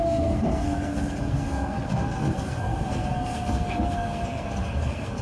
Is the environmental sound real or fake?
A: fake